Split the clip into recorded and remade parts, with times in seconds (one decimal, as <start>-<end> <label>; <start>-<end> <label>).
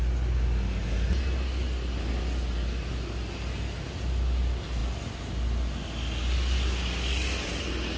0.0-8.0 recorded